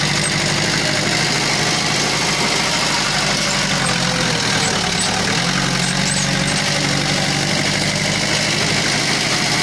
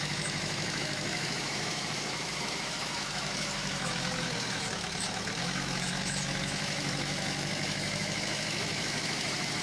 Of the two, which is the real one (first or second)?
first